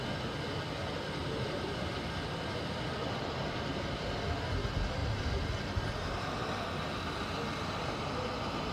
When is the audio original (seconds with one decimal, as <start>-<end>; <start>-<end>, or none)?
0.0-1.2; 2.9-5.0; 6.5-8.7